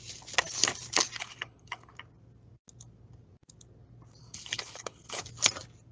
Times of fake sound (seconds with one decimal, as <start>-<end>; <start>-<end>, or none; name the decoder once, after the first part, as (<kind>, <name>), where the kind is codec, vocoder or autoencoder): 1.2-1.9 (codec, HILCodec); 4.2-5.2